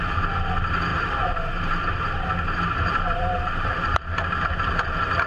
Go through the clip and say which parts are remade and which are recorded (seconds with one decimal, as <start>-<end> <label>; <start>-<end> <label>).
0.0-0.9 recorded; 0.9-4.1 remade; 4.1-5.3 recorded